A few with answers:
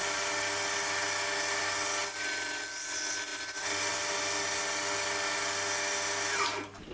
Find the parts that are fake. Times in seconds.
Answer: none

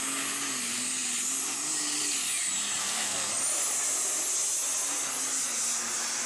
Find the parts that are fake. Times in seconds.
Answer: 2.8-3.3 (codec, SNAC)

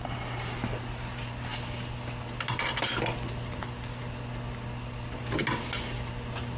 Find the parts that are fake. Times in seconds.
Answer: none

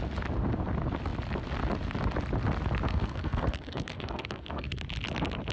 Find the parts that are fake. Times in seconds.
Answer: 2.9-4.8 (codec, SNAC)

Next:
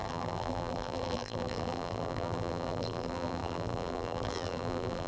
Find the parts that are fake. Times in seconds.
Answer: 0.0-5.1 (vocoder, BigVGAN v2)

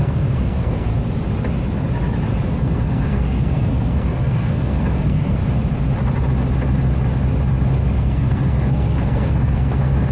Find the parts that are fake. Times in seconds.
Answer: 0.0-0.9 (codec, SNAC); 2.6-5.4; 7.8-10.1

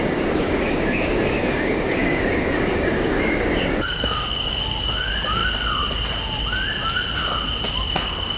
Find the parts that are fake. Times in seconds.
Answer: 0.0-5.4 (codec, DAC); 7.7-8.4

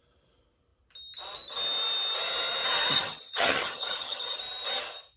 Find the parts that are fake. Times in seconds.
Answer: 2.9-4.4 (vocoder, HiFi-GAN)